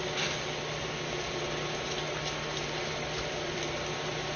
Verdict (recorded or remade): recorded